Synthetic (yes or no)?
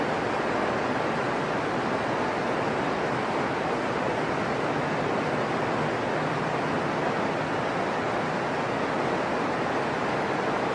no